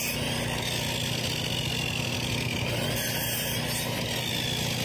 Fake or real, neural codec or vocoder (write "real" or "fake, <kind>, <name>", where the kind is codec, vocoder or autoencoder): real